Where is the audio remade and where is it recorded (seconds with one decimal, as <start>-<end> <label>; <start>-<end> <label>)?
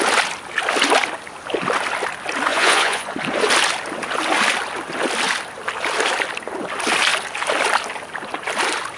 0.0-2.5 recorded; 2.5-3.1 remade; 3.1-9.0 recorded